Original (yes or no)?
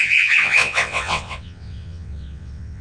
no